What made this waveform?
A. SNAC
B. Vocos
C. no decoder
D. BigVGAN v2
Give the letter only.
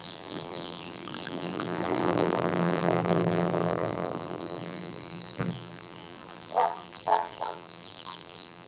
D